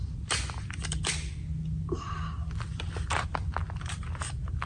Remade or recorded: recorded